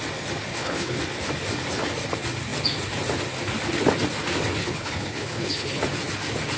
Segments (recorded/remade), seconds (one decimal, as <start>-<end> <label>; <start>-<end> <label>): 0.0-0.5 recorded; 0.5-1.0 remade; 1.0-4.6 recorded; 4.6-5.8 remade; 5.8-6.6 recorded